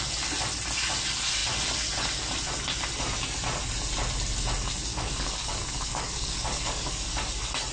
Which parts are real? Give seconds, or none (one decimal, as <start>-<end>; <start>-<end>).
0.0-4.9; 7.3-7.7